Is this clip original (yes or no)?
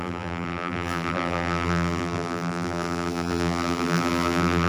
no